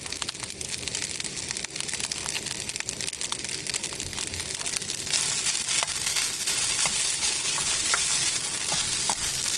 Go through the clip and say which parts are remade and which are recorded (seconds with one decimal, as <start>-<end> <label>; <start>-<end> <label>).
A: 0.0-6.9 recorded; 6.9-8.0 remade; 8.0-9.6 recorded